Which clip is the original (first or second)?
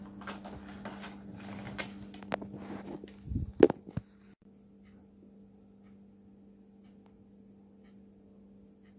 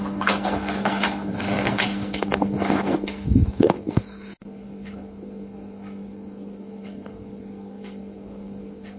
first